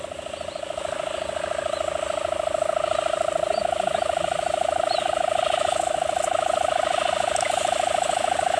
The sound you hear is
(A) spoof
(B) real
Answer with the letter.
B